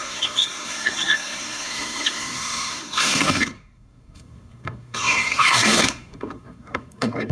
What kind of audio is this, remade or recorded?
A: remade